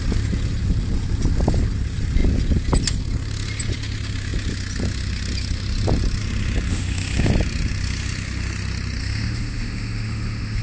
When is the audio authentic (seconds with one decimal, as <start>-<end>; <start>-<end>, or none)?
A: 0.0-6.7; 7.3-9.0